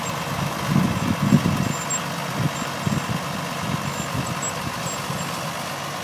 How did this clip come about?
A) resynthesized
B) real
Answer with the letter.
B